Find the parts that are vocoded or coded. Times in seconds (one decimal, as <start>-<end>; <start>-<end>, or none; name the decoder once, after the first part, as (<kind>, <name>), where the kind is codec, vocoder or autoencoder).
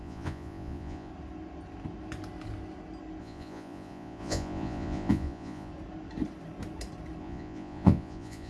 0.0-1.1 (vocoder, Vocos); 3.2-5.7; 7.2-8.5